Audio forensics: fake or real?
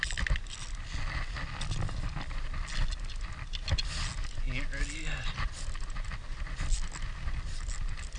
real